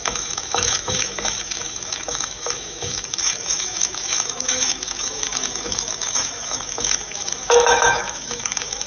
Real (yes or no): no